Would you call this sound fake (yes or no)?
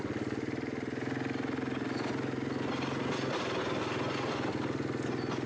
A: no